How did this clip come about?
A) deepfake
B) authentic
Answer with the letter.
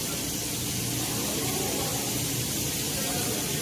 B